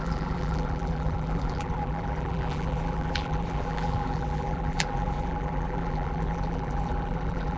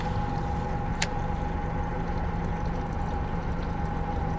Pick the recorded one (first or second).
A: second